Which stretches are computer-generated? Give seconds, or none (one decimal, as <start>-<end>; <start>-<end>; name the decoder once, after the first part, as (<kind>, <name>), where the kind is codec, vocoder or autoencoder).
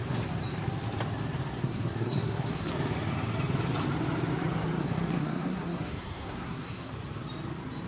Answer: 1.5-2.7 (codec, SNAC); 4.8-6.9